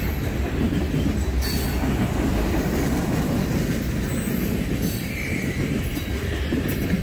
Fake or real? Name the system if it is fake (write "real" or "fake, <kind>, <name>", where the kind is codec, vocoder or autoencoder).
real